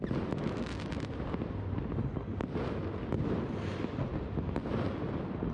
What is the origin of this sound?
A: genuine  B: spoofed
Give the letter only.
A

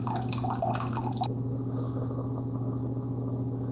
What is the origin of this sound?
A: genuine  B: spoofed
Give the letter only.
A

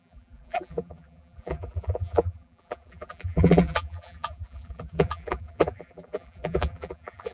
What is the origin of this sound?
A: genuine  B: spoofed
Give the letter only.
B